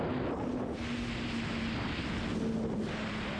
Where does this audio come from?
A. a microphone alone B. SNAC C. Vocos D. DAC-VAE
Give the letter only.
A